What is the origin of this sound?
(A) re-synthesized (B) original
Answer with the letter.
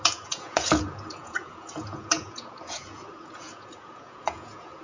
A